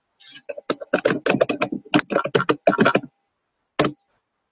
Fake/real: real